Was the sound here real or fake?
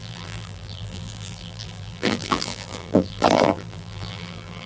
fake